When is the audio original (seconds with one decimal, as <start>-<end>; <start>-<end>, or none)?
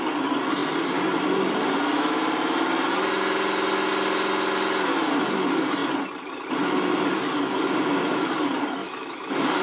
0.0-8.8